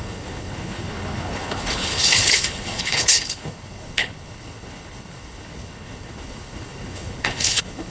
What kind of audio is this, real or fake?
fake